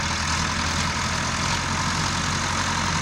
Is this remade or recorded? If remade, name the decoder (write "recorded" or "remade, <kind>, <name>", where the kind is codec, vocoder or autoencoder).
recorded